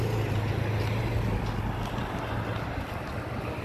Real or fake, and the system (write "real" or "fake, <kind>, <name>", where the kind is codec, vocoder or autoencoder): real